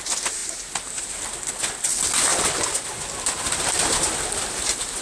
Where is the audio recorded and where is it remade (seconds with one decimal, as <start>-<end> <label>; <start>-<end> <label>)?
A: 0.0-5.0 recorded

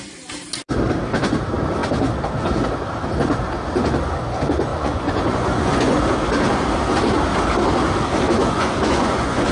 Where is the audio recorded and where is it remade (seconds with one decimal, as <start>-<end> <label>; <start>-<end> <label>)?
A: 0.0-4.7 recorded; 4.7-6.0 remade; 6.0-8.4 recorded; 8.4-9.5 remade

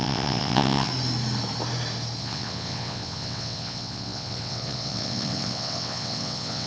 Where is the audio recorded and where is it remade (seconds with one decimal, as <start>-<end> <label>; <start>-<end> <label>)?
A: 0.0-0.9 remade; 0.9-2.2 recorded; 2.2-6.7 remade

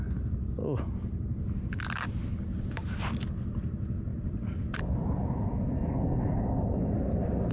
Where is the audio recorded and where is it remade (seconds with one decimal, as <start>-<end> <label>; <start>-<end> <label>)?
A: 0.0-4.1 recorded; 4.1-4.8 remade; 4.8-7.5 recorded

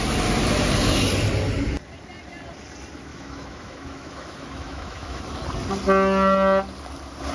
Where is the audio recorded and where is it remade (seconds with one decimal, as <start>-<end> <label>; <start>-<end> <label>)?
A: 0.0-3.1 recorded; 3.1-5.2 remade; 5.2-7.3 recorded

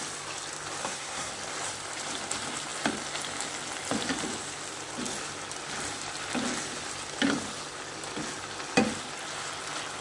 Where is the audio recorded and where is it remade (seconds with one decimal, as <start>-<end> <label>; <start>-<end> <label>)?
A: 0.0-0.8 recorded; 0.8-1.3 remade; 1.3-10.0 recorded

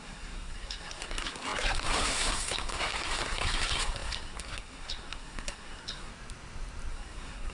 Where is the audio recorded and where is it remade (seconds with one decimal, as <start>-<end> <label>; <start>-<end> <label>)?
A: 0.0-6.1 remade; 6.1-6.9 recorded; 6.9-7.5 remade

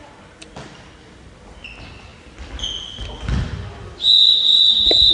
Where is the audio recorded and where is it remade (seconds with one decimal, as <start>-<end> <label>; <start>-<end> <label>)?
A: 0.0-5.1 recorded